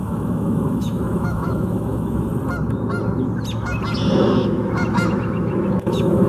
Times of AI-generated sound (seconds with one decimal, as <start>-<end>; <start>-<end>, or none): 0.0-2.3; 4.2-6.3

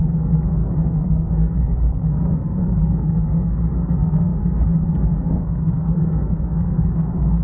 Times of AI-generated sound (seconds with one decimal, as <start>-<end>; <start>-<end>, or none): 0.0-7.4

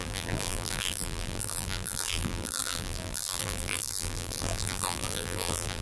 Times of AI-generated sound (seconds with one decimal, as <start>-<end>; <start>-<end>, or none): 0.0-5.8

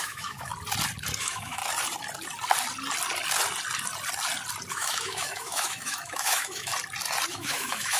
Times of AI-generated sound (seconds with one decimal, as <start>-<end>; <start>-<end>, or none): 0.0-0.5; 1.2-1.6; 4.7-6.7; 7.3-8.0

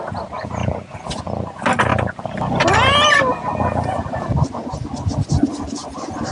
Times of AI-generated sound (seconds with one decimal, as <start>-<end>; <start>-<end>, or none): none

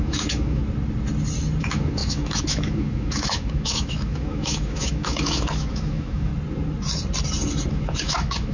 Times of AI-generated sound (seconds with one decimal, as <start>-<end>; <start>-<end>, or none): 0.0-0.6; 1.6-6.3; 7.7-8.5

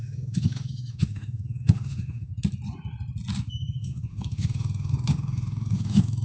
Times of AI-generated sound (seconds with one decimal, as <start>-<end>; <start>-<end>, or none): 0.0-2.3; 3.5-6.2